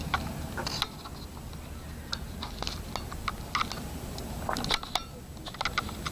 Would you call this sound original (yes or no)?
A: yes